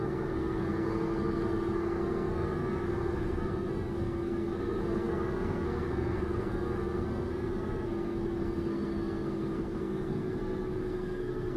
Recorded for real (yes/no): no